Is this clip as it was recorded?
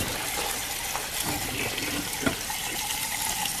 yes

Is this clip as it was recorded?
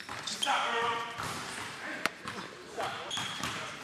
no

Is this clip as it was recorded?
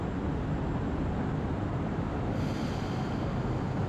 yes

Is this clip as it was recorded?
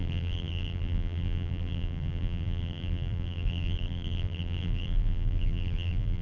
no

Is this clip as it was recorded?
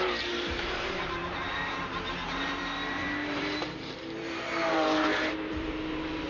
no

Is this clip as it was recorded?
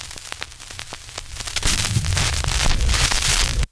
yes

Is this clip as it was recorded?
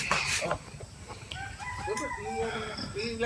yes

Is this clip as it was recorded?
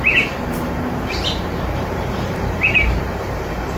no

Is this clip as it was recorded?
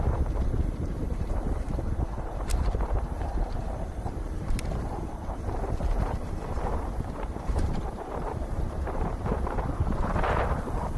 no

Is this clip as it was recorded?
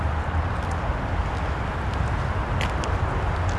yes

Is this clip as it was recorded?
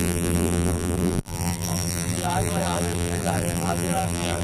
no